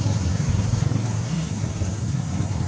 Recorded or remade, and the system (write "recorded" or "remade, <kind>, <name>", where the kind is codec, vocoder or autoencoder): remade, codec, SNAC